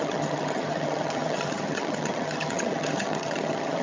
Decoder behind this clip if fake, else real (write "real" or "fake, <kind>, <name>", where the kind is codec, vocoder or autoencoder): fake, vocoder, HiFi-GAN